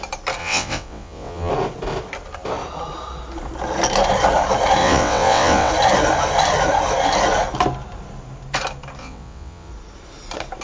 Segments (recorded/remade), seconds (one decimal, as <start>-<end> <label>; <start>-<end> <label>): 0.0-0.4 recorded; 0.4-1.5 remade; 1.5-4.8 recorded; 4.8-5.7 remade; 5.7-9.0 recorded; 9.0-9.7 remade; 9.7-10.6 recorded